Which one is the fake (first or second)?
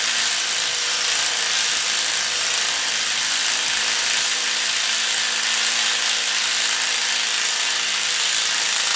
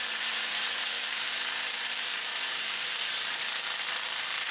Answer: second